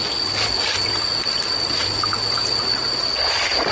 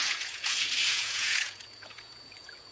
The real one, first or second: first